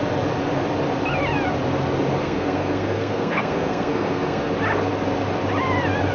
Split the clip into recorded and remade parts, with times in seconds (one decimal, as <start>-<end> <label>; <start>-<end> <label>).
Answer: 0.0-2.2 recorded; 2.2-4.5 remade; 4.5-6.1 recorded